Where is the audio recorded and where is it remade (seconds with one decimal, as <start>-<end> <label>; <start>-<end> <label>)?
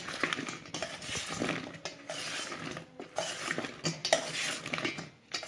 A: 0.0-5.5 recorded